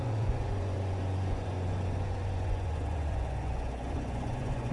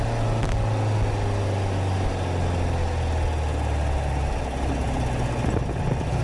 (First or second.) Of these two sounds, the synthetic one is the first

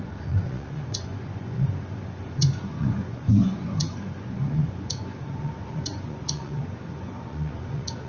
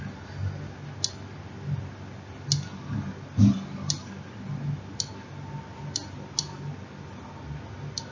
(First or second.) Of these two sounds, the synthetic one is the first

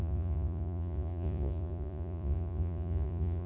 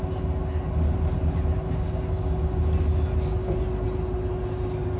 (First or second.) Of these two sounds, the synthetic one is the first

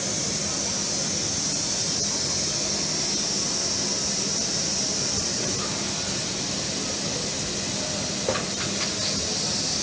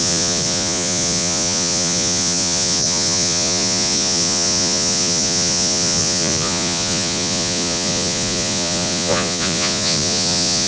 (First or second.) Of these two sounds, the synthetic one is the second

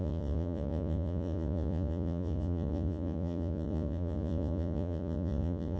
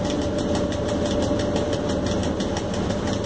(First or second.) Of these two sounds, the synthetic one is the first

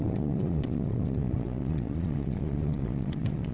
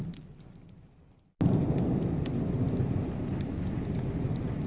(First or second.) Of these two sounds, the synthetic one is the first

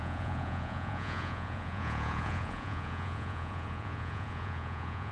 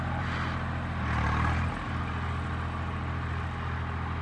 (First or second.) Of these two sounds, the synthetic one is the first